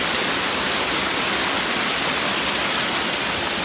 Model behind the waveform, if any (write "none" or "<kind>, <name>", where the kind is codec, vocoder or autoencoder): none